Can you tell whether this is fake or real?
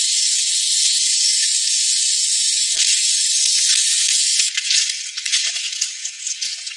fake